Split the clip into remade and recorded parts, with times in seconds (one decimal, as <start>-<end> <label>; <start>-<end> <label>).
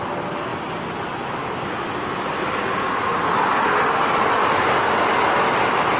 0.0-6.0 recorded